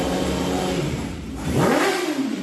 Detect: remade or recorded remade